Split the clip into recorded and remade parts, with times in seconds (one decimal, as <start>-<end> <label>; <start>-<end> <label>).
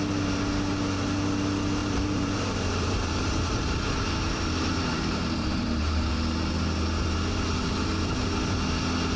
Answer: 0.0-1.8 recorded; 1.8-6.1 remade; 6.1-9.2 recorded